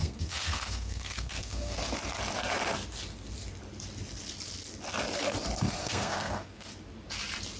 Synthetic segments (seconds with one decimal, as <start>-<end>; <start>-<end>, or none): 0.0-1.8; 5.8-6.7